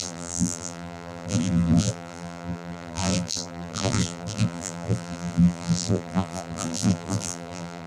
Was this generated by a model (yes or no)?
yes